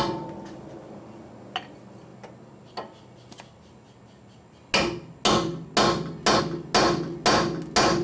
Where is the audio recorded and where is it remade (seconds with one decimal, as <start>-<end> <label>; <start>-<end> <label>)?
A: 0.0-8.0 recorded